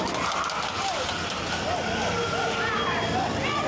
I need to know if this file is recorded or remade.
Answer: recorded